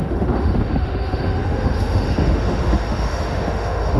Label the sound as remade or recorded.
remade